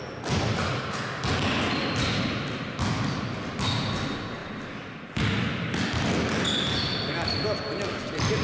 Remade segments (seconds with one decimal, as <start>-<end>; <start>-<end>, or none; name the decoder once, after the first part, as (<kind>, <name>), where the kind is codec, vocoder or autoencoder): none